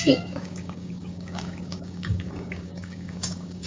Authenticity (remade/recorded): remade